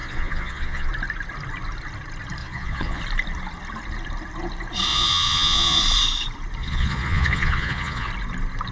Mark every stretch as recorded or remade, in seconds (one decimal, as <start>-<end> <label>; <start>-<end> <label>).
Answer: 0.0-0.9 remade; 0.9-2.4 recorded; 2.4-3.0 remade; 3.0-4.9 recorded; 4.9-5.8 remade; 5.8-6.6 recorded; 6.6-8.1 remade; 8.1-8.7 recorded

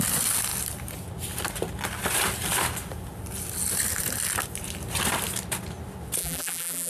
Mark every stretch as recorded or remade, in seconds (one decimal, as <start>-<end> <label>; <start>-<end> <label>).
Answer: 0.0-6.2 recorded; 6.2-6.9 remade

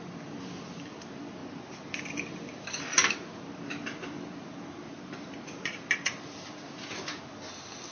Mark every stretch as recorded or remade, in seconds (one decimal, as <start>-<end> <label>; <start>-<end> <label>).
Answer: 0.0-7.9 recorded